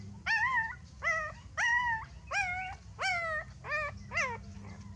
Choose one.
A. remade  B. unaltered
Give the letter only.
B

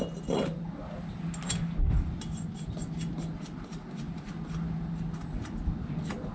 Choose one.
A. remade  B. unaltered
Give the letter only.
B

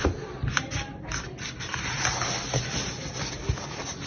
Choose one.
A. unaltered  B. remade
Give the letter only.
A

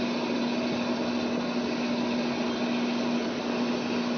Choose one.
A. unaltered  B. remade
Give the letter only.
A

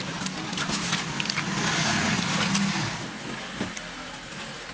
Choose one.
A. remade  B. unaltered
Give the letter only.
B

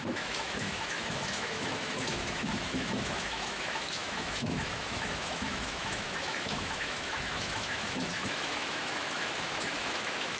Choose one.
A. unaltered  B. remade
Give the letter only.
B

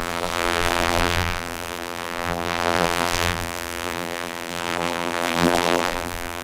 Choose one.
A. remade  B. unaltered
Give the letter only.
A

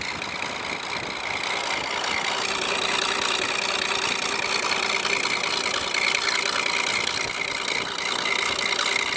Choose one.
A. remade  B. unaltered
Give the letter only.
B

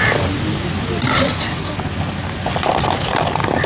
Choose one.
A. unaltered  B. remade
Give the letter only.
A